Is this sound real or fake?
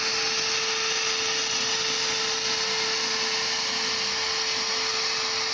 real